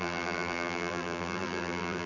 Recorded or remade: remade